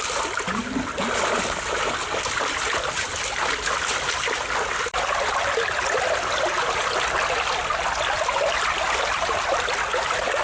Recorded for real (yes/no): yes